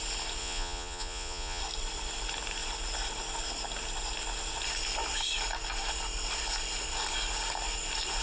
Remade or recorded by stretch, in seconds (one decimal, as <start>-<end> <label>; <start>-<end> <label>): 0.0-0.4 recorded; 0.4-1.6 remade; 1.6-8.2 recorded